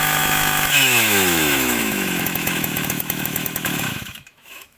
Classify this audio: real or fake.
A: fake